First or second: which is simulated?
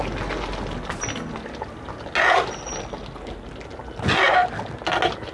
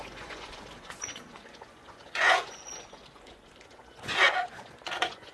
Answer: second